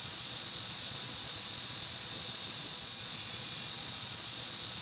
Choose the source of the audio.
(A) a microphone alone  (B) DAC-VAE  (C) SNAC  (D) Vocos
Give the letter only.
D